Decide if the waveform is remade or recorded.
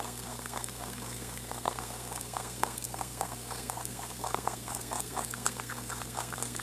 remade